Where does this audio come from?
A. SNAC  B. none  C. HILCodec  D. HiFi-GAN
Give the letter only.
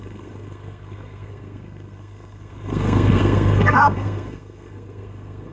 A